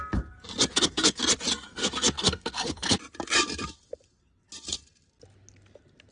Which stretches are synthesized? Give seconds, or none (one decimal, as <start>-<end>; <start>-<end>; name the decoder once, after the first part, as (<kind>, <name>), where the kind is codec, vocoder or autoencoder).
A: 0.7-1.2 (codec, SNAC); 1.8-3.0